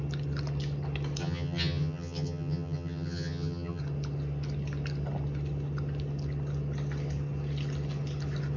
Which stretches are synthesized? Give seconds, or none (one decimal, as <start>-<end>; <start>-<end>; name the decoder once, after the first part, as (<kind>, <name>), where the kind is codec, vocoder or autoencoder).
1.2-3.8 (vocoder, HiFi-GAN)